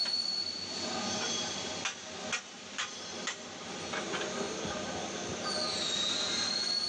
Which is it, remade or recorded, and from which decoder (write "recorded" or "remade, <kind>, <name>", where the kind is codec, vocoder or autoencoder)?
recorded